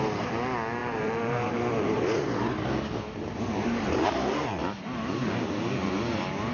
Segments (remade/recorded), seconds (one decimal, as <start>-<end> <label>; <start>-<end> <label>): 0.0-0.8 recorded; 0.8-2.0 remade; 2.0-3.2 recorded; 3.2-4.4 remade; 4.4-6.5 recorded